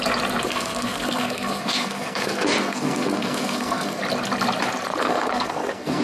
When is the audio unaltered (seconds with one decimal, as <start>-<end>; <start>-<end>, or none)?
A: 0.0-0.4; 4.0-5.0